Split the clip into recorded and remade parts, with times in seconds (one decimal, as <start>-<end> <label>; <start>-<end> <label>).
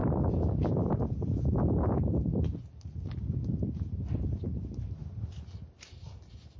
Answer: 0.0-6.6 recorded